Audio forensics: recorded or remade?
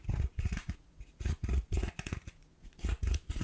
remade